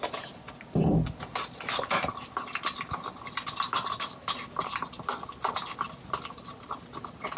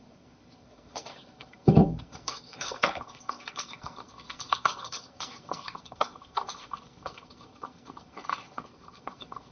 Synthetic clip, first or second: second